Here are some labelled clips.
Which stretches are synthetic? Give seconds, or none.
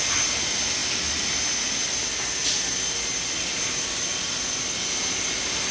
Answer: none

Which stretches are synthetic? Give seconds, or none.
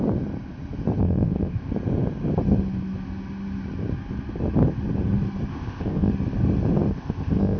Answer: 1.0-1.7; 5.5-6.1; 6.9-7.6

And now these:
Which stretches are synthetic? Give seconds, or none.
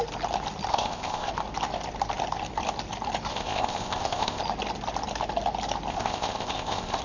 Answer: 0.7-1.3; 3.3-4.4; 5.9-7.0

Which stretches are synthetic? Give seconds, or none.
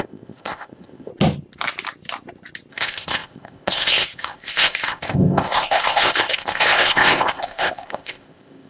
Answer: 0.0-1.1; 2.7-8.7